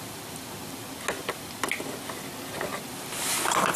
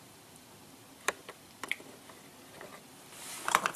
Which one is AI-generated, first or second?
second